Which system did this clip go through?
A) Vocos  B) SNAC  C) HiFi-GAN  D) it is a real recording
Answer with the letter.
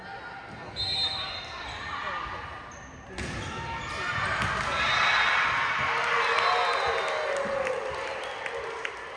D